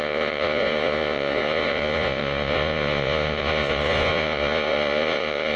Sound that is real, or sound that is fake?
fake